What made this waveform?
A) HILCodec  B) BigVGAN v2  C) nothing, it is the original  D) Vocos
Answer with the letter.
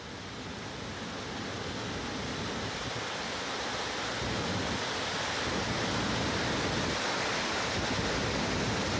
C